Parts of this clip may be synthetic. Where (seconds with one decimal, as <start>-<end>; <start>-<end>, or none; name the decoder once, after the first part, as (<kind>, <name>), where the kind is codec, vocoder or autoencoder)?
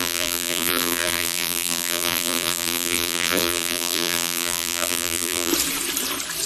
0.0-5.5 (vocoder, BigVGAN v2)